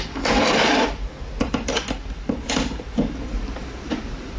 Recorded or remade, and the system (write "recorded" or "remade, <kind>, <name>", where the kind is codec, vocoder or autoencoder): remade, vocoder, BigVGAN v2